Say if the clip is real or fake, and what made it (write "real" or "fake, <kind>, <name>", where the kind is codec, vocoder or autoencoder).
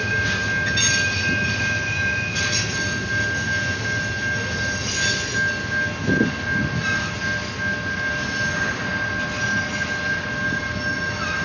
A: real